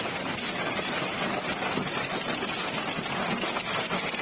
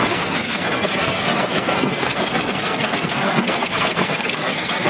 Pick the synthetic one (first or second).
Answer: second